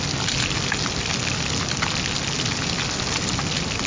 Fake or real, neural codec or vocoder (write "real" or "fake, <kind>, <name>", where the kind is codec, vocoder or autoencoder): real